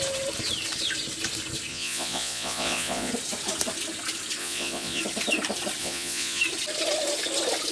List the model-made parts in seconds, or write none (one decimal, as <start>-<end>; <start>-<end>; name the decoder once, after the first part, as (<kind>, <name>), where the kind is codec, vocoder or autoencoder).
1.7-3.1 (vocoder, Vocos); 4.4-5.0; 5.8-6.4